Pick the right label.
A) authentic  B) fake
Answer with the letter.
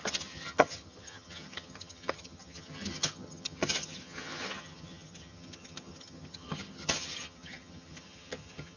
B